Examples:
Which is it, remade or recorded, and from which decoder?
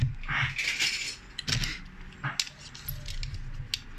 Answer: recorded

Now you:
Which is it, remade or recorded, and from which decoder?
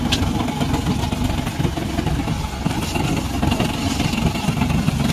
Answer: recorded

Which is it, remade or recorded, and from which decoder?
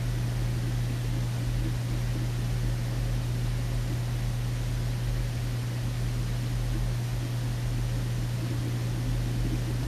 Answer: remade, vocoder, BigVGAN v2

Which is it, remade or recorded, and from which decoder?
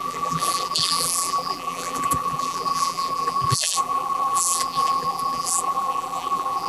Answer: remade, vocoder, BigVGAN v2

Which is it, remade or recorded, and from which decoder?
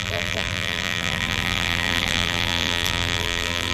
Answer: remade, vocoder, BigVGAN v2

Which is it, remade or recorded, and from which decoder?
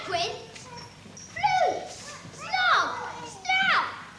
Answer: recorded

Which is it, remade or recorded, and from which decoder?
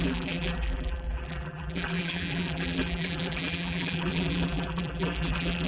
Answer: remade, vocoder, BigVGAN v2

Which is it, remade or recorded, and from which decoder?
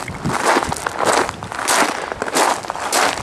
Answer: recorded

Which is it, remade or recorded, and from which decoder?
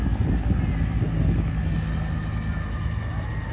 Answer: recorded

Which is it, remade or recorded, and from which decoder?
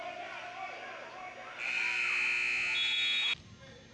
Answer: recorded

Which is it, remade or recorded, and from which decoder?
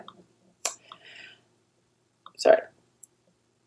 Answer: remade, vocoder, BigVGAN v2